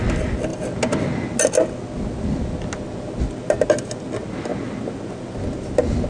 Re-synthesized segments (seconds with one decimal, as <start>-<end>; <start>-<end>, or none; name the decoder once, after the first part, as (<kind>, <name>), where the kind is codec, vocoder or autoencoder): none